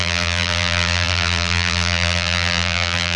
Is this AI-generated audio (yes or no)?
yes